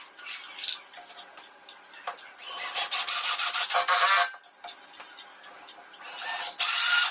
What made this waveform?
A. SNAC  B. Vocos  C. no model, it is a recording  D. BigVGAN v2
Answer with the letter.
C